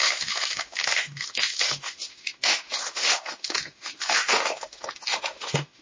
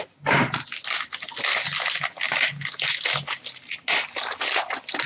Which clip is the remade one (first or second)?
first